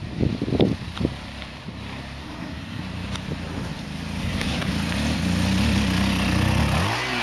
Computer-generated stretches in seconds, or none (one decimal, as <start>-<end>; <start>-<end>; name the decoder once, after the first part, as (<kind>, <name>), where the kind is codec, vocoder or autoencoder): 2.2-2.8 (codec, SNAC); 4.2-4.7